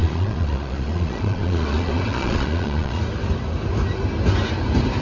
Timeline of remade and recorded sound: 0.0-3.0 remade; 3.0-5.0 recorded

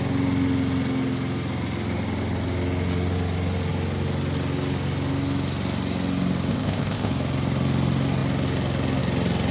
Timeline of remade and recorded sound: 0.0-6.5 recorded; 6.5-7.1 remade; 7.1-9.5 recorded